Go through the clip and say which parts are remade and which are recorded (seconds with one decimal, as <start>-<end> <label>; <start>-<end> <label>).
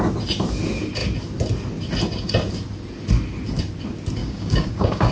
0.0-4.2 recorded; 4.2-5.1 remade